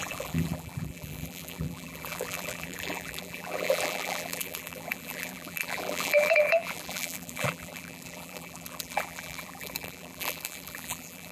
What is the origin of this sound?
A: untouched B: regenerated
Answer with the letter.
B